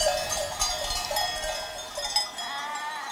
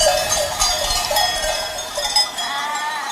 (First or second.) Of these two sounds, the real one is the first